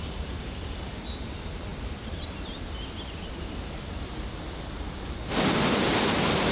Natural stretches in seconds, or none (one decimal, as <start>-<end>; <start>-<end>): 0.0-6.5